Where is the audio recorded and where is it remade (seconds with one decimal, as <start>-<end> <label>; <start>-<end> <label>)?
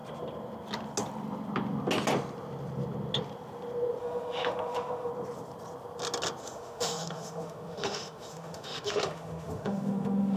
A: 0.0-4.0 recorded; 4.0-5.1 remade; 5.1-6.4 recorded; 6.4-10.4 remade